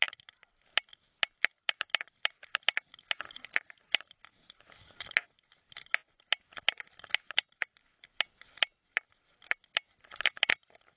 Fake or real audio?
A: real